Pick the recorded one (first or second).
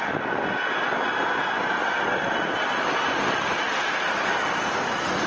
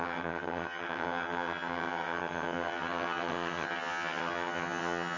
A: first